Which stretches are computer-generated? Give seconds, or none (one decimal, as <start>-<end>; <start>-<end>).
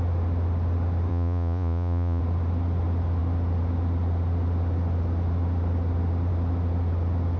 1.1-2.2